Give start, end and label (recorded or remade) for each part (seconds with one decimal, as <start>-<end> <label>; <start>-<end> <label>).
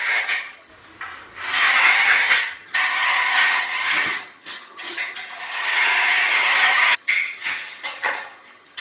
0.0-0.7 remade; 0.7-1.6 recorded; 1.6-8.8 remade